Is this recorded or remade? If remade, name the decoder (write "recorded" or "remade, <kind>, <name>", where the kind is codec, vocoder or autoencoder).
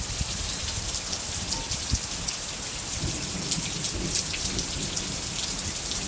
recorded